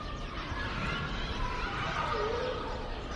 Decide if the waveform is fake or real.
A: real